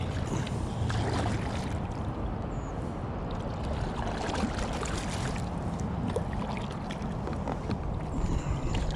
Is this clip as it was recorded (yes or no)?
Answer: yes